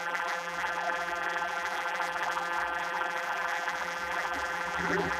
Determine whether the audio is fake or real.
fake